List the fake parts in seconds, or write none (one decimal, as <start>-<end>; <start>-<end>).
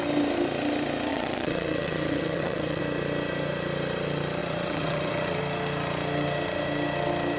1.1-2.8; 4.4-5.4